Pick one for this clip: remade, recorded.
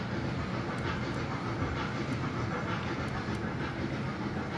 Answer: recorded